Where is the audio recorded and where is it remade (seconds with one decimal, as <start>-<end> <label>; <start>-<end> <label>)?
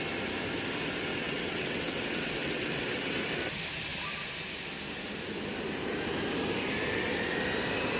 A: 0.0-1.1 recorded; 1.1-3.2 remade; 3.2-8.0 recorded